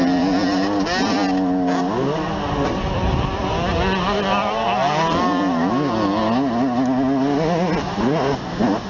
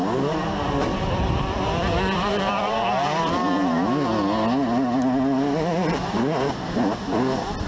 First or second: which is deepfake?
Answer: second